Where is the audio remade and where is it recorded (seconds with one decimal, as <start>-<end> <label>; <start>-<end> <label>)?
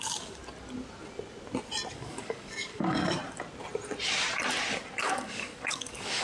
0.0-0.4 remade; 0.4-1.9 recorded; 1.9-3.2 remade; 3.2-5.0 recorded; 5.0-6.2 remade